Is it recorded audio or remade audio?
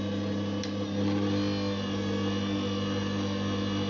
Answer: recorded